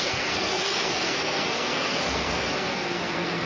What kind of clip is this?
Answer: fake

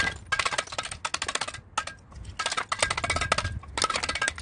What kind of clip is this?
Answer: real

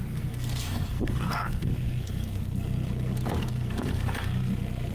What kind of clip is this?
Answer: fake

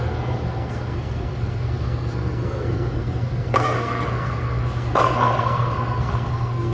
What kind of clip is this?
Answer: fake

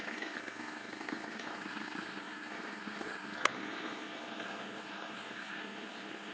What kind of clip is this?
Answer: fake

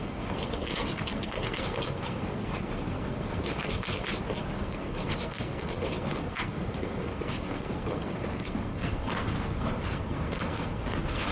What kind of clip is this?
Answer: fake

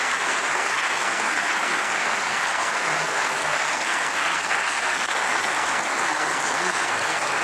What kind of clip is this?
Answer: fake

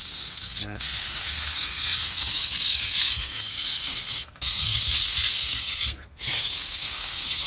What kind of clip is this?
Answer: fake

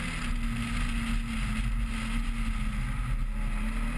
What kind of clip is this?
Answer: real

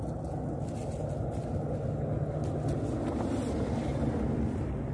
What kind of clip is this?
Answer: real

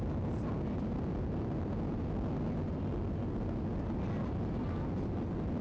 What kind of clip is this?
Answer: real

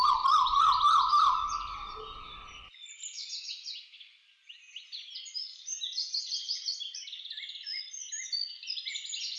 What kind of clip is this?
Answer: real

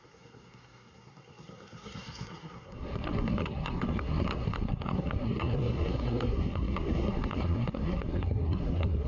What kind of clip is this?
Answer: fake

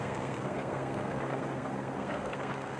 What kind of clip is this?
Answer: fake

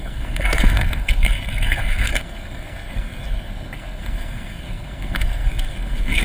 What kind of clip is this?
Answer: fake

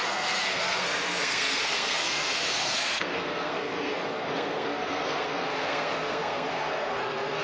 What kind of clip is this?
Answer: fake